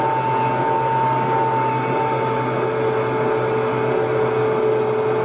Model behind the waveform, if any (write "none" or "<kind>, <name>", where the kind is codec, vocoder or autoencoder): none